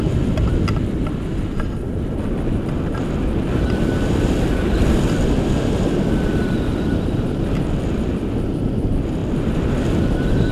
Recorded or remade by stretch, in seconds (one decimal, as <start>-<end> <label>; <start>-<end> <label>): 0.0-10.5 recorded